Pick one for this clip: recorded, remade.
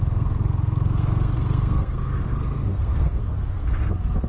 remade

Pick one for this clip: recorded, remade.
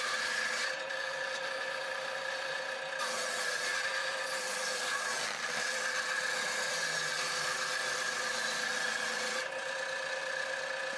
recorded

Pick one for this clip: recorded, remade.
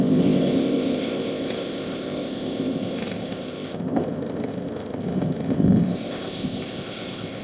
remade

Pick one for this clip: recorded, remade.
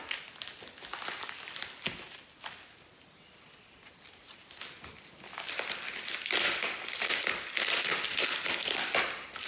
recorded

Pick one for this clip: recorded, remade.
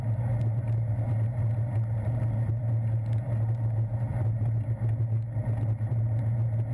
recorded